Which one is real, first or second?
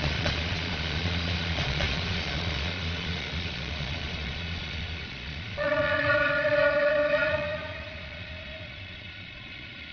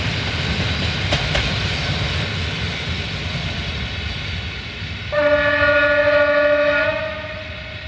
second